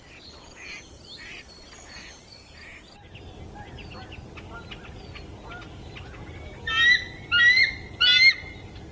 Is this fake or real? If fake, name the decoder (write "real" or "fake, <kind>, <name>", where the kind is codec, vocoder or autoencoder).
real